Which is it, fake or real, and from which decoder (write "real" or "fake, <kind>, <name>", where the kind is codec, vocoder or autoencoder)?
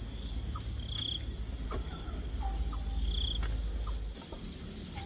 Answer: real